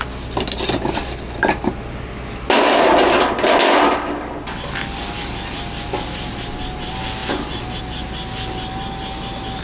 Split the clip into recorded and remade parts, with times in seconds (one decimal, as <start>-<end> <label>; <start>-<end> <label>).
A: 0.0-9.6 recorded